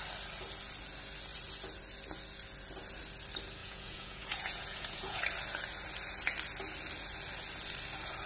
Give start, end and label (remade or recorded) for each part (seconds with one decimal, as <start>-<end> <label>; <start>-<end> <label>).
0.0-3.6 recorded; 3.6-5.2 remade; 5.2-8.3 recorded